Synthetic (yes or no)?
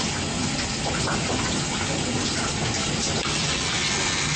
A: no